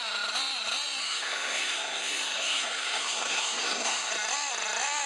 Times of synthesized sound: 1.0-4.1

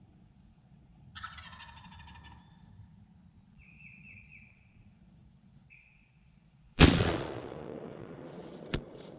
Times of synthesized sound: 0.0-1.1; 3.5-9.2

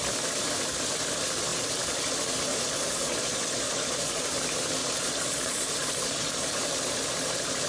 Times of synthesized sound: 2.5-4.3; 4.8-6.4

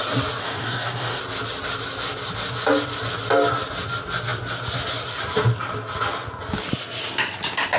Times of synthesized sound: 0.4-1.2

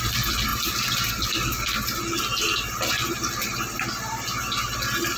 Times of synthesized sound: 0.5-1.1

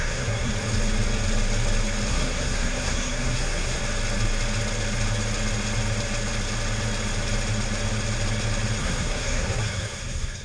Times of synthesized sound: 0.0-0.5; 2.1-3.8; 8.8-10.4

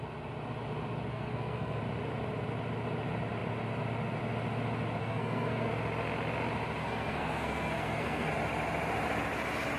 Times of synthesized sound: 1.1-1.8; 5.0-5.7; 6.8-8.3